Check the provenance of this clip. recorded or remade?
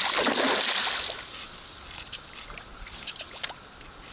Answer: recorded